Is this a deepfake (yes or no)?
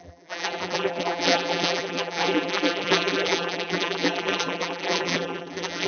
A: yes